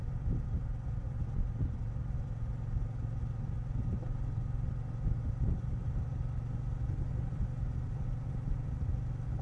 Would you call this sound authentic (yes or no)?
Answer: yes